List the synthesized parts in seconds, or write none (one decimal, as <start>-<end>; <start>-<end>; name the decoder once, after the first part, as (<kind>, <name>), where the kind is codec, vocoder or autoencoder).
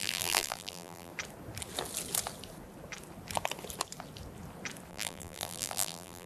0.0-1.1 (vocoder, BigVGAN v2); 4.9-6.3